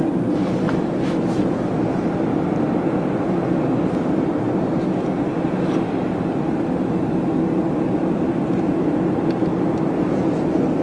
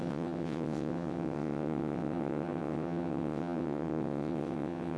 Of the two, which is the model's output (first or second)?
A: second